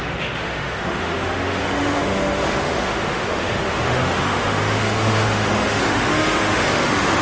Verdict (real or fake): fake